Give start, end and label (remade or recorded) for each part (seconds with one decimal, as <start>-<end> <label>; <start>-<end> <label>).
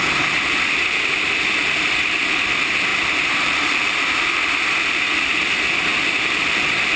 0.0-7.0 remade